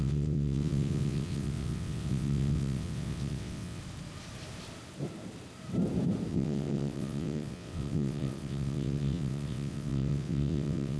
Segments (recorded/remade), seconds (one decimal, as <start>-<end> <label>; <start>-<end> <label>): 0.0-3.8 remade; 3.8-6.3 recorded; 6.3-11.0 remade